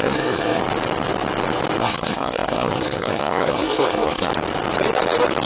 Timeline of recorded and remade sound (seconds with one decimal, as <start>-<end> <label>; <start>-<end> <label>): 0.0-0.6 remade; 0.6-1.8 recorded; 1.8-4.3 remade; 4.3-5.5 recorded